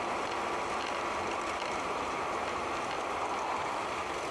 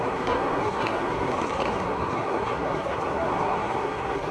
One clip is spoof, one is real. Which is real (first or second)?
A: first